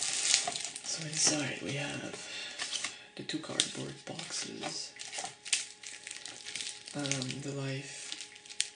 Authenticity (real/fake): real